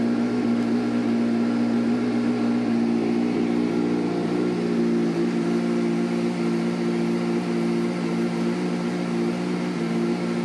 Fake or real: real